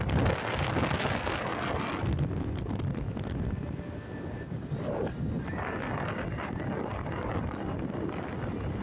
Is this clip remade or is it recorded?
recorded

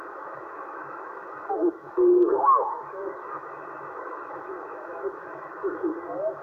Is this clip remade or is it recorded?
remade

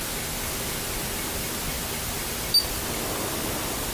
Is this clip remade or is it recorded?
recorded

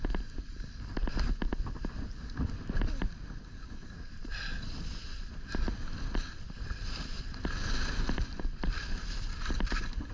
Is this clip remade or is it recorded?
recorded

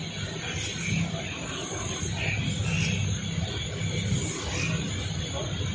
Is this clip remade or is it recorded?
recorded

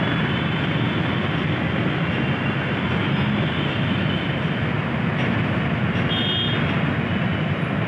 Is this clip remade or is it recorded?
recorded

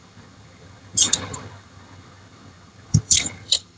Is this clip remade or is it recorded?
remade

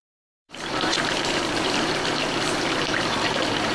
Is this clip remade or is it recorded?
remade